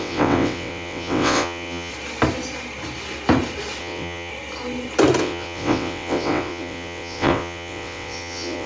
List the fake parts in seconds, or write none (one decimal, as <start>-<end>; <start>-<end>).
0.0-1.9; 3.8-4.3; 5.2-8.7